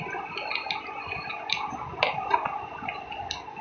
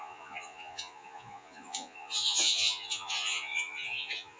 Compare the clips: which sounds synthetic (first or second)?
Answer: second